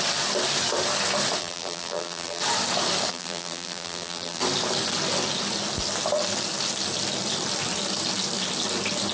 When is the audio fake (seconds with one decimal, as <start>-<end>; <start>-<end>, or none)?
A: 1.4-2.4; 3.1-4.4